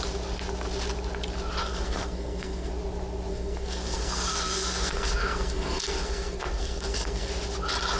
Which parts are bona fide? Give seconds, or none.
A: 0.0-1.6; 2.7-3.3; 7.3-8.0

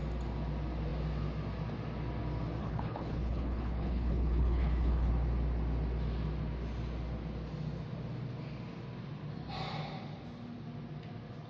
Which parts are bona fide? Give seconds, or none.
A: 0.0-2.6; 5.1-11.5

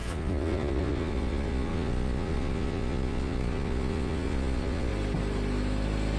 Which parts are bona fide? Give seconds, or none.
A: 4.9-6.2

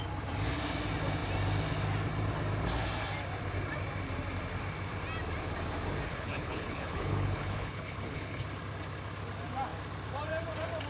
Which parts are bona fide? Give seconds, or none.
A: 0.0-6.1; 8.4-10.9